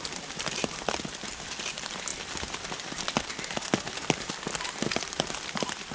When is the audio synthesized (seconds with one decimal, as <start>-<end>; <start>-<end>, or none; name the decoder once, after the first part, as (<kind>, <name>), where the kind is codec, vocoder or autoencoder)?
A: none